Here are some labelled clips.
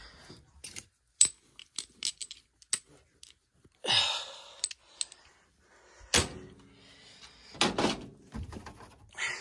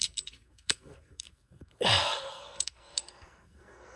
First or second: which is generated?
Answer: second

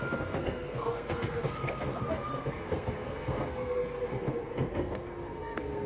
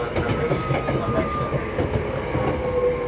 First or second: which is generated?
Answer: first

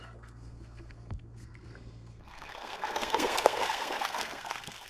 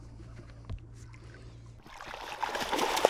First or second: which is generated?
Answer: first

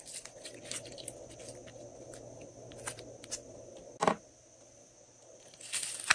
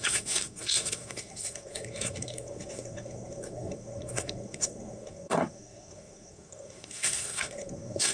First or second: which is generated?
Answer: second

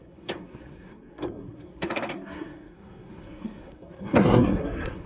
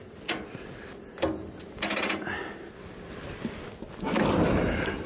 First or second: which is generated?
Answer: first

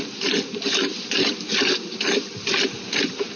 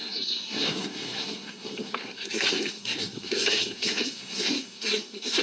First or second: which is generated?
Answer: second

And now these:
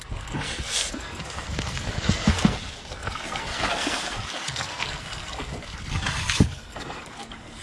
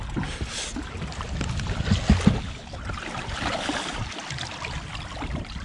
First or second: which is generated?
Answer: first